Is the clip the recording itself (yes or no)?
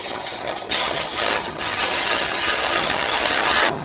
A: no